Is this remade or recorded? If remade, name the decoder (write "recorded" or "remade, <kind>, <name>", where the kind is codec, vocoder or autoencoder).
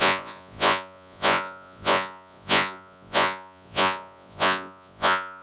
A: remade, vocoder, Vocos